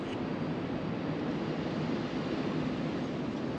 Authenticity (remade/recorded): recorded